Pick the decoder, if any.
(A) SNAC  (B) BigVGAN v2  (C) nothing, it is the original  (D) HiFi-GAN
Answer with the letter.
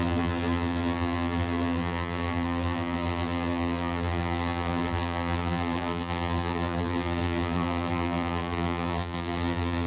B